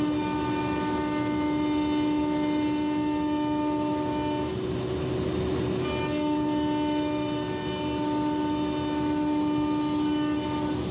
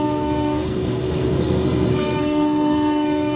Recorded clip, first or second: first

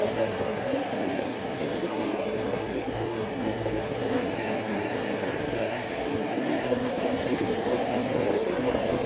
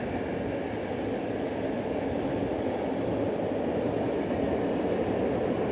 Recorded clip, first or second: second